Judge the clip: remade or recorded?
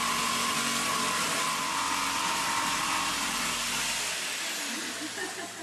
recorded